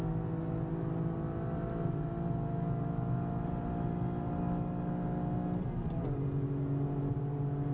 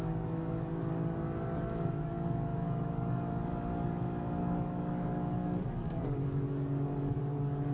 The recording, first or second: first